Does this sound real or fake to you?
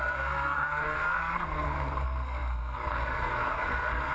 fake